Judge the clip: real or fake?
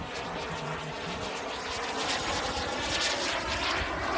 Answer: real